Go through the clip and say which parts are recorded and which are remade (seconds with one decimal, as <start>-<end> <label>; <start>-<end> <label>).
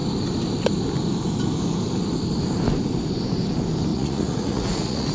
0.0-3.9 recorded; 3.9-5.1 remade